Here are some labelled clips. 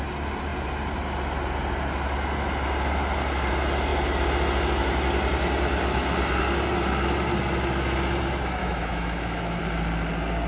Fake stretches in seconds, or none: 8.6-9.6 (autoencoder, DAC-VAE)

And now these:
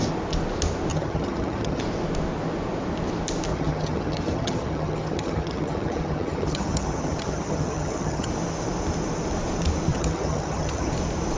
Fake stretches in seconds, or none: 0.9-1.8 (vocoder, HiFi-GAN); 3.5-8.3; 9.9-10.9